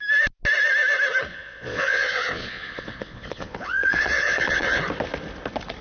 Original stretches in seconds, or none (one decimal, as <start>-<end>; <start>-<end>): 0.0-1.3; 4.8-5.8